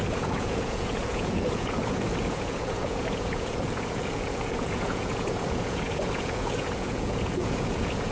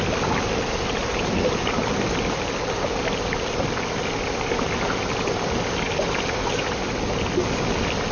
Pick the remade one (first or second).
first